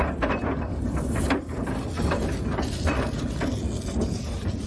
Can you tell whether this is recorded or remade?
recorded